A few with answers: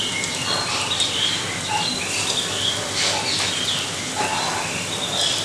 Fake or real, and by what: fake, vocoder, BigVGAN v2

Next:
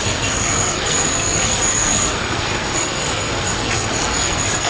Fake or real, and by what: fake, codec, SNAC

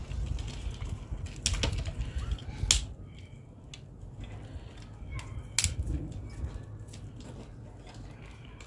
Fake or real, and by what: real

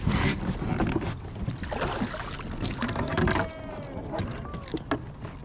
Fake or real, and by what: real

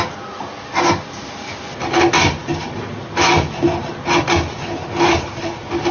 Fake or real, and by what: real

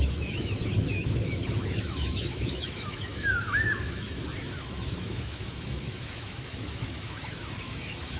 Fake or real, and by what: fake, autoencoder, DAC-VAE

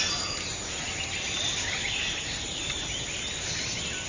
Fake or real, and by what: real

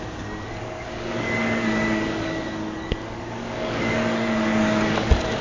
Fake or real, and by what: fake, codec, DAC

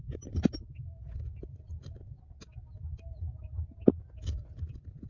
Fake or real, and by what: real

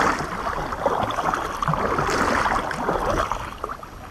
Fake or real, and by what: real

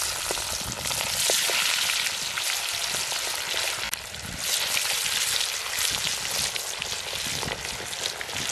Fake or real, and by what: real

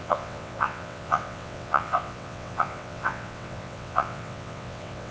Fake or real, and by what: fake, vocoder, WaveNeXt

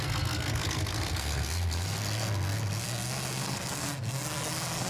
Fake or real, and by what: fake, codec, SNAC